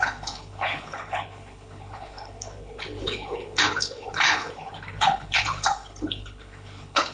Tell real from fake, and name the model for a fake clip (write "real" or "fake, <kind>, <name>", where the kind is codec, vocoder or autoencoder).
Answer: fake, codec, HILCodec